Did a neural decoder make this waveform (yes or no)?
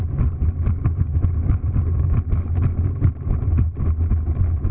no